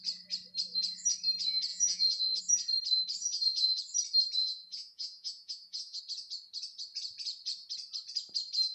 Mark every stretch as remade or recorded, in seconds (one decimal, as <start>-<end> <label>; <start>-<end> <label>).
0.0-1.7 recorded; 1.7-2.4 remade; 2.4-3.2 recorded; 3.2-3.8 remade; 3.8-4.4 recorded; 4.4-6.0 remade; 6.0-8.7 recorded